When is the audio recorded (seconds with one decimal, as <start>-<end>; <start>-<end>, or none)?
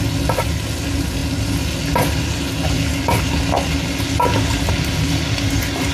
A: 0.0-5.9